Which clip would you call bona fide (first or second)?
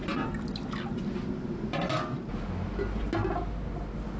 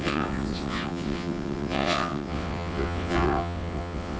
first